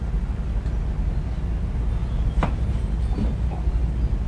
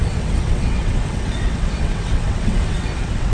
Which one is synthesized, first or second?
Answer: second